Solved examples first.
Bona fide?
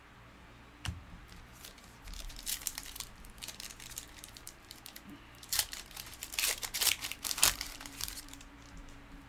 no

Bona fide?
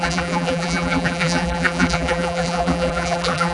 no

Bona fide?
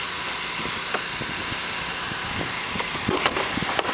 no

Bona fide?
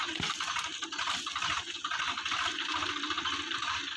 yes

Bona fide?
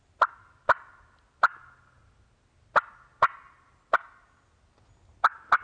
yes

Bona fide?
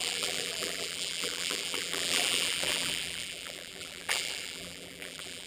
no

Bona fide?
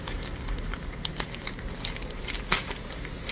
no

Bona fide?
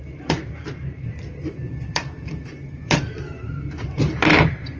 no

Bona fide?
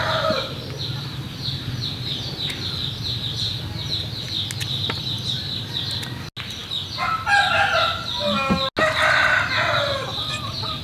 yes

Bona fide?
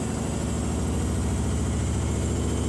yes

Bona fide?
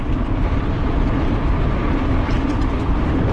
no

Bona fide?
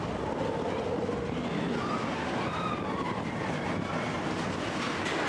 yes